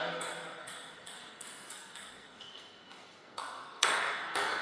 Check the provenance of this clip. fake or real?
fake